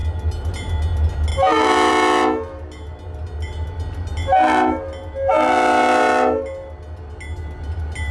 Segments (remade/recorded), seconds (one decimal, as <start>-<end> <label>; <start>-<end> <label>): 0.0-8.1 recorded